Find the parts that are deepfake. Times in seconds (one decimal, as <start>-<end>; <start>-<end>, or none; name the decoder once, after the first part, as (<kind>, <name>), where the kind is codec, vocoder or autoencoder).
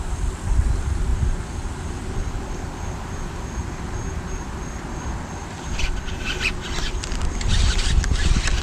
none